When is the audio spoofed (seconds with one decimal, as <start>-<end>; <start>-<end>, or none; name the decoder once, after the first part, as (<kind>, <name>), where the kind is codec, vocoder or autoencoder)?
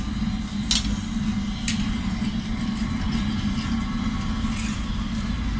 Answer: none